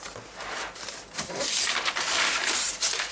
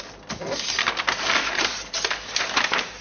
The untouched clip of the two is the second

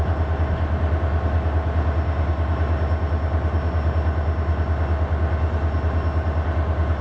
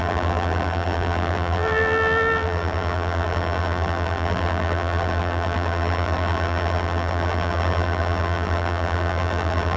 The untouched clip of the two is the first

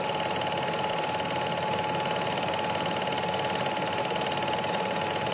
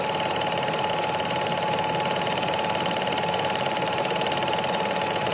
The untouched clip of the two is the first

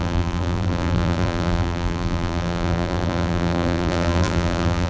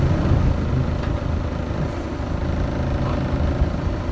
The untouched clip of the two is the second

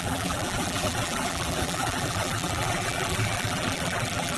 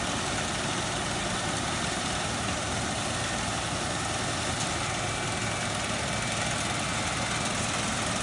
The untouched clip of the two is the second